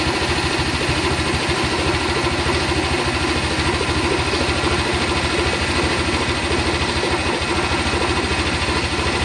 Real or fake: real